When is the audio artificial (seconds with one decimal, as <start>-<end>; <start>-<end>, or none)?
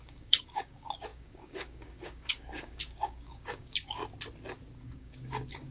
0.0-4.0; 4.8-5.7